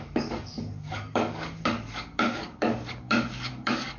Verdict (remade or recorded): remade